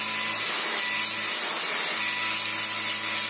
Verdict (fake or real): real